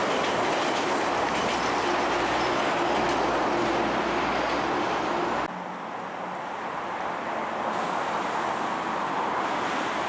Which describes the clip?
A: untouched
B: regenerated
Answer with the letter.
A